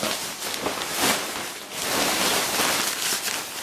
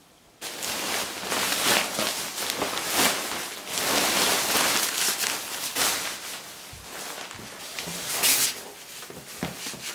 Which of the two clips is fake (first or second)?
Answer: first